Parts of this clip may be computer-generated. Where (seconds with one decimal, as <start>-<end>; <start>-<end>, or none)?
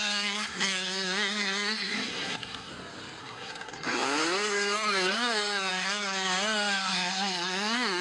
0.0-2.7; 3.2-8.0